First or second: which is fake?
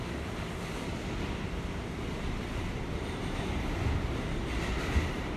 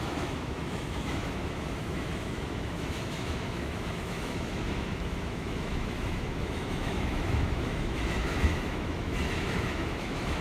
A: second